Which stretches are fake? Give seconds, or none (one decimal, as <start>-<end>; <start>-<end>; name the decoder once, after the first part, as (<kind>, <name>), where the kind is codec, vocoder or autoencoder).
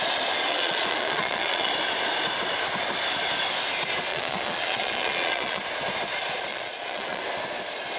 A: 0.5-1.7 (vocoder, Vocos); 4.1-5.6; 6.5-7.2